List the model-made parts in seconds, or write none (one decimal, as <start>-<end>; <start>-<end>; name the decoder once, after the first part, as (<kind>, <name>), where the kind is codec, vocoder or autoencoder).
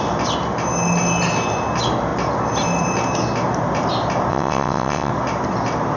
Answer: 4.3-5.1 (vocoder, WaveNeXt)